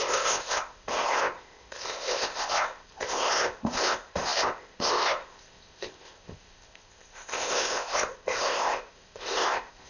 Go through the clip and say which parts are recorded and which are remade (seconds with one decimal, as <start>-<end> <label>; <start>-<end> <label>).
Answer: 0.0-9.9 remade